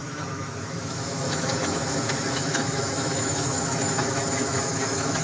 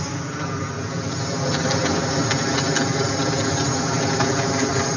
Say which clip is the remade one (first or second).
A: first